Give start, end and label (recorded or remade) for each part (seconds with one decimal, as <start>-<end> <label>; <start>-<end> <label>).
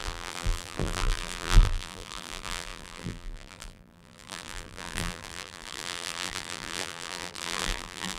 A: 0.0-8.2 remade